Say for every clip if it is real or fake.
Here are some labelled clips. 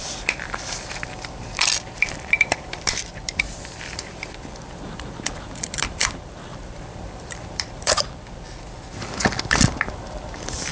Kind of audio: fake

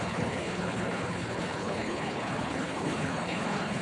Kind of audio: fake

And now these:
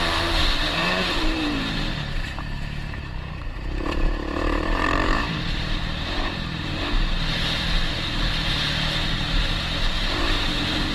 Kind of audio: fake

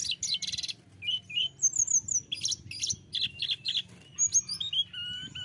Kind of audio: real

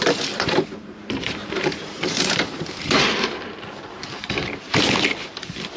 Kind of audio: fake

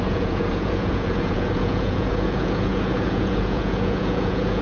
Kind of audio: fake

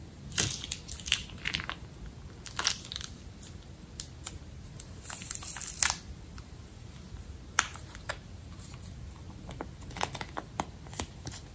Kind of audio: real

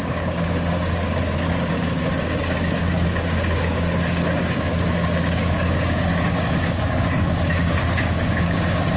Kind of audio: fake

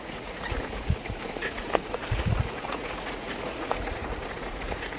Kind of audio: fake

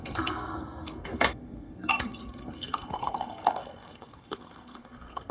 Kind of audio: fake